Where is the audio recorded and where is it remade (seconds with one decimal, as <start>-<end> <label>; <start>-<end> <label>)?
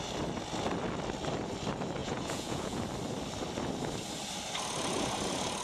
0.0-2.0 recorded; 2.0-2.8 remade; 2.8-5.6 recorded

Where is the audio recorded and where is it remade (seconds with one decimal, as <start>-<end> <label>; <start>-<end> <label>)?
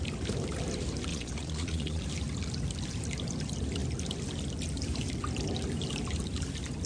0.0-1.1 recorded; 1.1-2.0 remade; 2.0-6.9 recorded